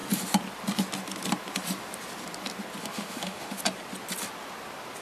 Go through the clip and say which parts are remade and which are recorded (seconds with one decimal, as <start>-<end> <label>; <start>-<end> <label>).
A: 0.0-2.8 recorded; 2.8-3.6 remade; 3.6-5.0 recorded